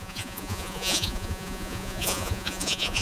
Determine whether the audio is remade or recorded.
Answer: remade